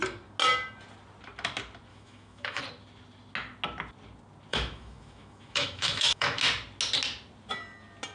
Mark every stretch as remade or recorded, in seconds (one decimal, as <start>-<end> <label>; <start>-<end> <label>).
0.0-1.9 recorded; 1.9-2.6 remade; 2.6-4.5 recorded; 4.5-6.4 remade; 6.4-8.1 recorded